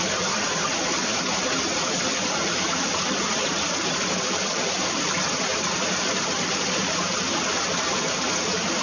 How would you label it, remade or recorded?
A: remade